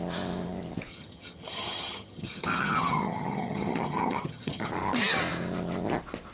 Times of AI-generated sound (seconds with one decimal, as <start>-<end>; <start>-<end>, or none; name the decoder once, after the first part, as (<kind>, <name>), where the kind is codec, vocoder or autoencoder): 0.9-4.7 (vocoder, HiFi-GAN)